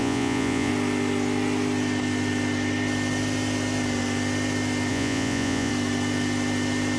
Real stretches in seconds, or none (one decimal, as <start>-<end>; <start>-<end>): 0.7-4.9; 5.7-7.0